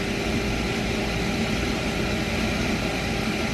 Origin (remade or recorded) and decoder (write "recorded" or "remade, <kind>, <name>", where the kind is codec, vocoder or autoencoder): recorded